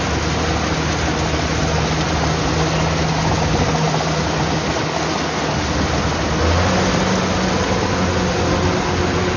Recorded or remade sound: recorded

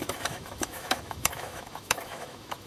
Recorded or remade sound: remade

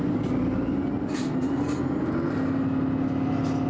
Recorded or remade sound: recorded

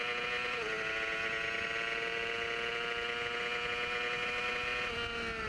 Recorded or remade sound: recorded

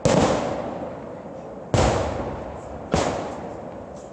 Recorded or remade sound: recorded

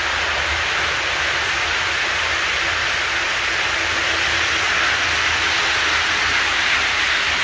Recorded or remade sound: recorded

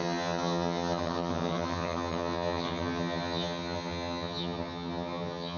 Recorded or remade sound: remade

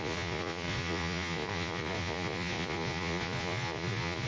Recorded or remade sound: remade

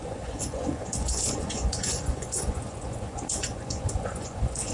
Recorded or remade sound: remade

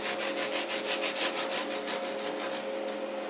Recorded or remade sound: recorded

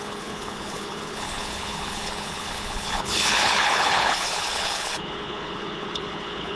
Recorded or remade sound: remade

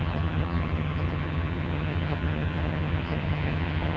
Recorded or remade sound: remade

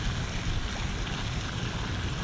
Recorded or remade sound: recorded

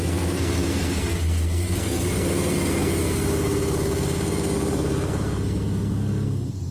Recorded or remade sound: remade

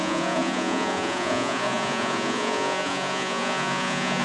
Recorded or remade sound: remade